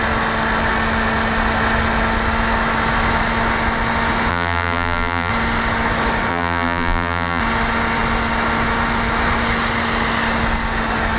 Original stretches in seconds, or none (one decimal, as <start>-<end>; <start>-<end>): 0.0-4.3; 5.3-6.3; 7.4-11.2